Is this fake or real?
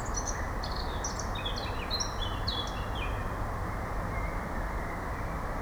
real